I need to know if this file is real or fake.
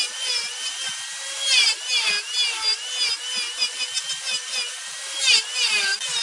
real